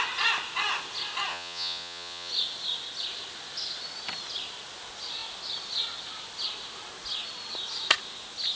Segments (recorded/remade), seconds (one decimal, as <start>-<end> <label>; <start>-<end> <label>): 0.0-1.3 recorded; 1.3-2.3 remade; 2.3-8.6 recorded